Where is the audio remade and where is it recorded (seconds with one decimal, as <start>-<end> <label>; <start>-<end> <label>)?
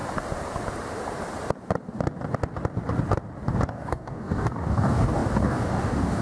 0.0-3.7 recorded; 3.7-6.2 remade